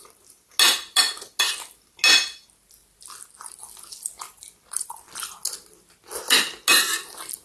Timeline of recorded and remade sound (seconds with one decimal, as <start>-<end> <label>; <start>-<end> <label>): 0.0-7.4 recorded